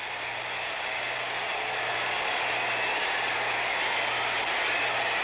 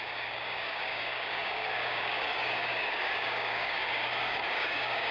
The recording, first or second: first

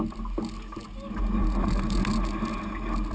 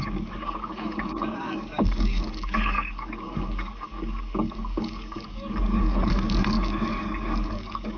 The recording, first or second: first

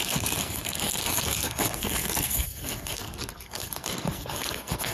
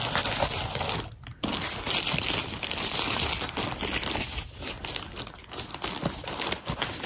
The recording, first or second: second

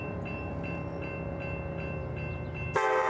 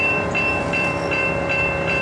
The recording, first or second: first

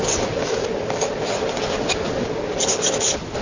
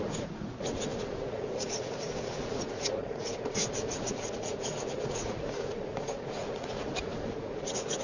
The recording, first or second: first